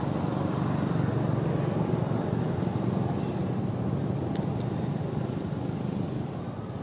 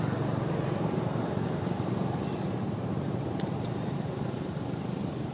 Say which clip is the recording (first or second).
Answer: first